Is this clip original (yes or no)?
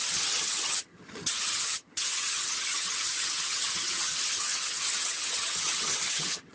no